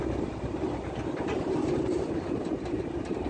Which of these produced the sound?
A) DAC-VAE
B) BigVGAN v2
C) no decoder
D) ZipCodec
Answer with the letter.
C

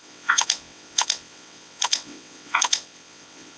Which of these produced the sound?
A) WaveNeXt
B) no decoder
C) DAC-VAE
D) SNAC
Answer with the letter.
A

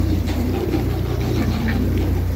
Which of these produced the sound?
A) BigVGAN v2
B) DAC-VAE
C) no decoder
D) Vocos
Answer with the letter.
A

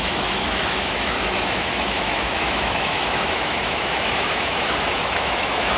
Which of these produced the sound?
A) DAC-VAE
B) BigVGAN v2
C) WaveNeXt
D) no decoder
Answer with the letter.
A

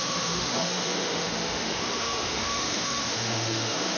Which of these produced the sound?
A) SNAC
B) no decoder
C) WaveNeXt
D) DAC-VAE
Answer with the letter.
D